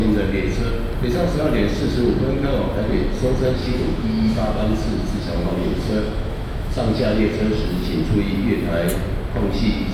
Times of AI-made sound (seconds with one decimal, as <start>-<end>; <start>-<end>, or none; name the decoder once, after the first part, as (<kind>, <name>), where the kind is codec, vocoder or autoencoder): 3.6-7.2 (autoencoder, DAC-VAE)

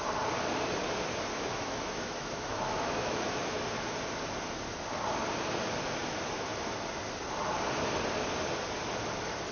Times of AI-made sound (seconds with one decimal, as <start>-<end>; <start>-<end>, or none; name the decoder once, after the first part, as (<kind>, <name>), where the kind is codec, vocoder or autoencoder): 1.3-3.6 (autoencoder, DAC-VAE)